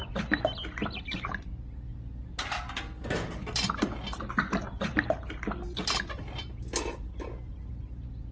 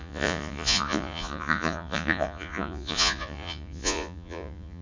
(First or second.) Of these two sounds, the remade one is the second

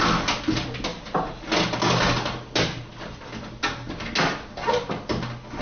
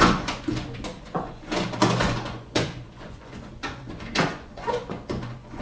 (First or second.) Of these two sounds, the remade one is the second